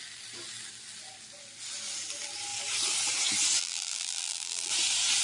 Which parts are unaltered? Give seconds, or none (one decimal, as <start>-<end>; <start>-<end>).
0.0-3.6; 4.7-5.2